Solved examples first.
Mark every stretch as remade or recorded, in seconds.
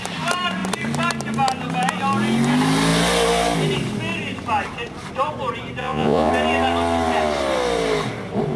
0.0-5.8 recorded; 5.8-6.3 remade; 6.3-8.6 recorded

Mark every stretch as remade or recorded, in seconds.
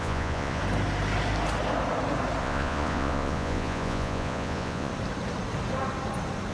0.0-0.6 remade; 0.6-2.4 recorded; 2.4-4.9 remade; 4.9-6.5 recorded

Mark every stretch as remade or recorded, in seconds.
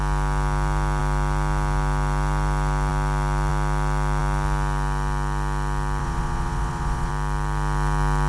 0.0-6.0 recorded; 6.0-7.1 remade; 7.1-8.3 recorded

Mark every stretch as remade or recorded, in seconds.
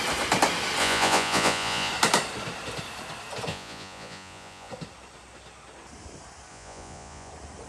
0.0-0.8 recorded; 0.8-1.9 remade; 1.9-3.5 recorded; 3.5-4.7 remade; 4.7-6.5 recorded; 6.5-7.3 remade; 7.3-7.7 recorded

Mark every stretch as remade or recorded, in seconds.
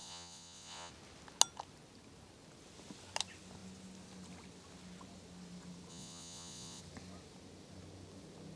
0.0-0.9 remade; 0.9-5.9 recorded; 5.9-6.8 remade; 6.8-8.6 recorded